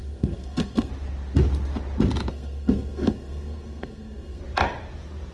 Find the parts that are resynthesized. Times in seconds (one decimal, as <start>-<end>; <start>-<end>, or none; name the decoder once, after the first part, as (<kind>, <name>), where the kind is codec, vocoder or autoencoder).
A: 0.0-0.9 (codec, SNAC); 2.3-4.4

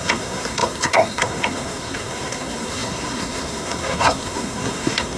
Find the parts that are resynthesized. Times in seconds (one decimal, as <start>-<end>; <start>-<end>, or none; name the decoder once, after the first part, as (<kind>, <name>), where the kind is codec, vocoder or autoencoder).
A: 0.0-5.2 (codec, SNAC)

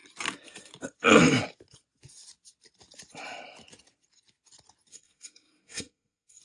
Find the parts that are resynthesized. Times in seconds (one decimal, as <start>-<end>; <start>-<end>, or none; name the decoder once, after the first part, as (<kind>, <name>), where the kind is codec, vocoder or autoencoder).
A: 4.9-6.4 (codec, SNAC)

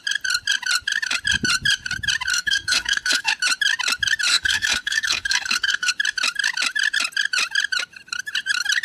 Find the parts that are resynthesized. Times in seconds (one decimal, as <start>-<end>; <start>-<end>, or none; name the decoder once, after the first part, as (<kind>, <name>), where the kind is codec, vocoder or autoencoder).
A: 2.3-3.3 (codec, SNAC); 4.3-5.9